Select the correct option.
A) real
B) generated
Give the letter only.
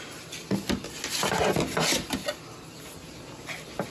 A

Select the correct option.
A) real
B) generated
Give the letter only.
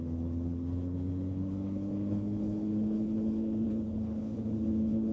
B